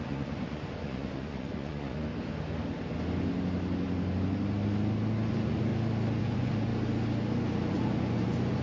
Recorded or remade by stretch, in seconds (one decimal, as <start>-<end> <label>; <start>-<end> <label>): 0.0-2.1 remade; 2.1-5.3 recorded; 5.3-5.7 remade; 5.7-6.2 recorded; 6.2-6.7 remade; 6.7-7.7 recorded; 7.7-8.6 remade